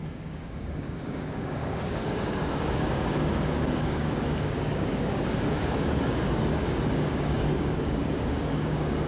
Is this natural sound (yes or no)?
no